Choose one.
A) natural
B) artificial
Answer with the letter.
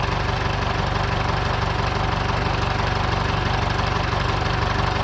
A